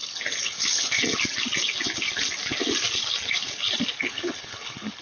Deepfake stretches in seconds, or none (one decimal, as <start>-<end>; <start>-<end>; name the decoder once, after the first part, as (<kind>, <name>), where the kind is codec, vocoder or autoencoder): 0.0-1.0 (codec, HILCodec); 4.0-5.0

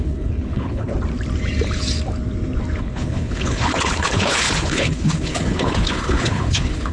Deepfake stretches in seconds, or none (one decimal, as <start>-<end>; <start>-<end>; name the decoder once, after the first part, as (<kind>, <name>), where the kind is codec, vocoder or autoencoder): 0.0-0.9 (codec, HILCodec); 2.8-6.9